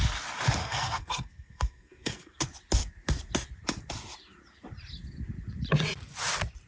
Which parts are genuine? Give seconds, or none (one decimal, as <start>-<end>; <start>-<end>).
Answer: 0.0-0.6; 2.4-6.7